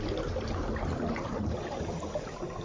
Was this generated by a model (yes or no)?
no